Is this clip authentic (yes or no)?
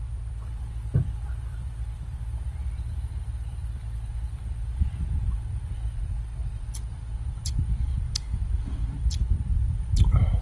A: no